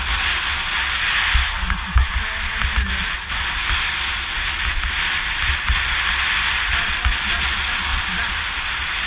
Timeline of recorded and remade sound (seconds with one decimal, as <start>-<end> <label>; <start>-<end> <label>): 0.0-1.4 recorded; 1.4-2.1 remade; 2.1-9.1 recorded